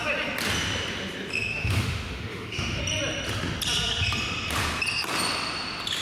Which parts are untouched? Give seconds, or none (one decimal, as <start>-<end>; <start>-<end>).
0.0-1.5; 2.8-6.0